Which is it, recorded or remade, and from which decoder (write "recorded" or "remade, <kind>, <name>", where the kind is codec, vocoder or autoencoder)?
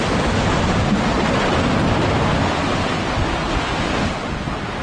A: recorded